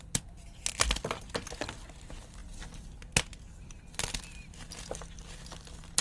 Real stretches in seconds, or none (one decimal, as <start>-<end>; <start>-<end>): 0.0-6.0